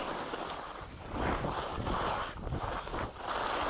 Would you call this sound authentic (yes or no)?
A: yes